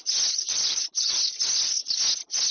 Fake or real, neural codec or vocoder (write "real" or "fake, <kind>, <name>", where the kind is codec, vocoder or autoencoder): real